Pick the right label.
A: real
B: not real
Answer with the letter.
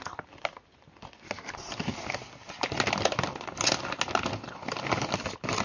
A